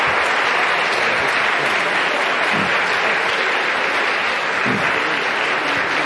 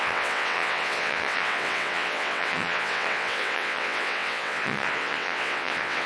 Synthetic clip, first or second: second